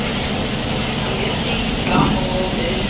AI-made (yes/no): no